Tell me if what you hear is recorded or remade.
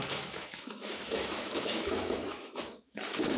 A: remade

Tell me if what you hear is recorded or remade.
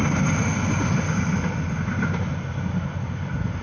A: recorded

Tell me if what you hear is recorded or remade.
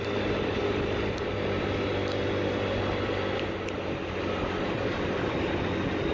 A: recorded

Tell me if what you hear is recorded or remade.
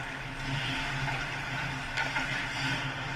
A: recorded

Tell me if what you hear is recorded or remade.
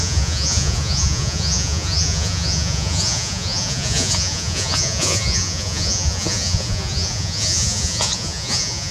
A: remade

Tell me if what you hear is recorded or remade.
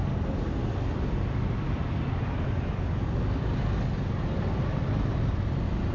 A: recorded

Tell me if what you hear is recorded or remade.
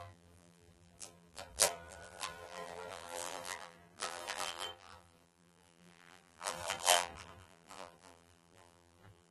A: remade